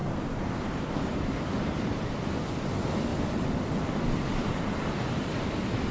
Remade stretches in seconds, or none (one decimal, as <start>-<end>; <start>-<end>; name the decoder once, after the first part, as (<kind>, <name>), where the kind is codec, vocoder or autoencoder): 0.0-1.4 (vocoder, BigVGAN v2); 3.1-3.8